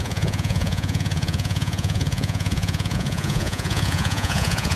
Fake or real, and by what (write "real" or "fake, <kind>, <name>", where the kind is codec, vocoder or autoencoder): fake, vocoder, Vocos